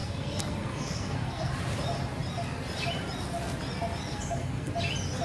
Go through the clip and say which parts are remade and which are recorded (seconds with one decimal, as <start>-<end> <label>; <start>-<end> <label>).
0.0-1.5 remade; 1.5-4.1 recorded; 4.1-4.7 remade; 4.7-5.2 recorded